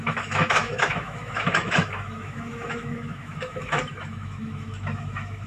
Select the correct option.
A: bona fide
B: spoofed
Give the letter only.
B